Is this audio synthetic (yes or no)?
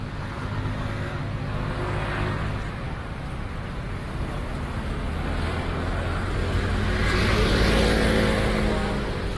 no